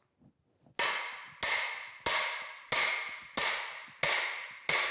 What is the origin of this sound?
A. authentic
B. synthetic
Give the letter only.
A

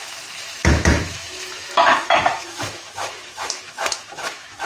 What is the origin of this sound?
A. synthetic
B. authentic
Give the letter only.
A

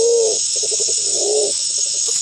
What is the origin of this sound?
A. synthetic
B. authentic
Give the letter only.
A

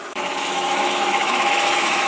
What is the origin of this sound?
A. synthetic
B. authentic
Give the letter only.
A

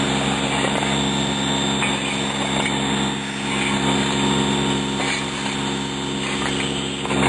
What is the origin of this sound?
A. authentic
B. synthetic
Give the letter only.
A